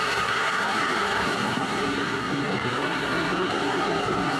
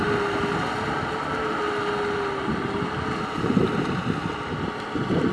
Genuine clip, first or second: second